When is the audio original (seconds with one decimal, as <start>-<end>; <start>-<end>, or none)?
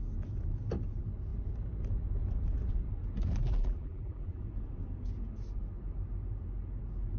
0.0-3.4; 4.4-7.2